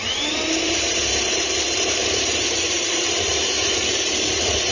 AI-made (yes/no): yes